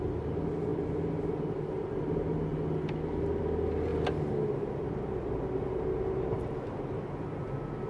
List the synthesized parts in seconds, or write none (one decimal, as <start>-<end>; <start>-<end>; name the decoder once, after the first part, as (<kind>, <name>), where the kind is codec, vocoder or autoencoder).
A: 3.9-4.4 (vocoder, BigVGAN v2)